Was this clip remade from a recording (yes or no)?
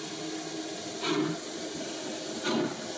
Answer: no